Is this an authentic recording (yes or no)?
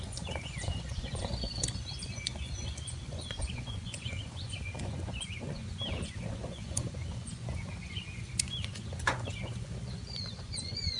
no